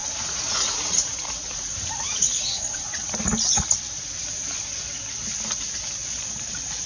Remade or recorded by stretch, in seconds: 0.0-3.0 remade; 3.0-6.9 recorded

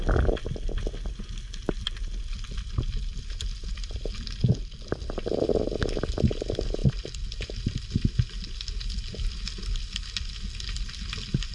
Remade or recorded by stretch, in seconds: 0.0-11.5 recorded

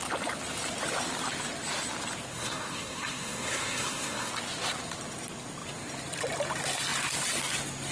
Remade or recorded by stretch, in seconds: 0.0-2.3 recorded; 2.3-4.3 remade; 4.3-7.9 recorded

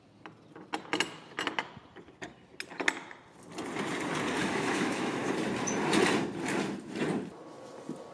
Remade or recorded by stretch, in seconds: 0.0-4.4 recorded; 4.4-5.3 remade; 5.3-8.1 recorded

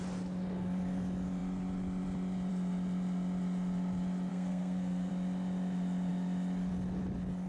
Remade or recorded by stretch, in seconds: 0.0-4.3 recorded; 4.3-5.1 remade; 5.1-7.5 recorded

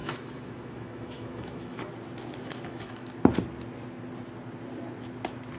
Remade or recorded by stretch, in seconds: 0.0-1.8 remade; 1.8-2.4 recorded; 2.4-3.1 remade; 3.1-5.6 recorded

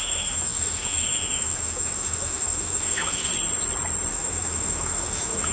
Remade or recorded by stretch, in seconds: 0.0-3.3 remade; 3.3-4.1 recorded; 4.1-5.5 remade

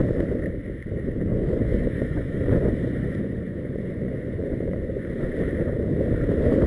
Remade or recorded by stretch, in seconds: 0.0-1.3 recorded; 1.3-5.3 remade; 5.3-6.7 recorded